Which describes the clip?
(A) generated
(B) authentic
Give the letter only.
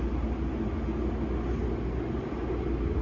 B